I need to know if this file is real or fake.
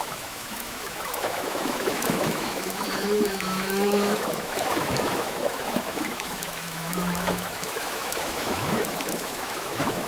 fake